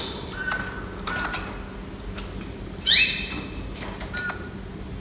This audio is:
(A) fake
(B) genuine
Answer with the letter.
B